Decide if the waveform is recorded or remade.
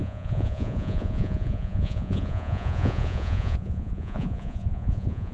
remade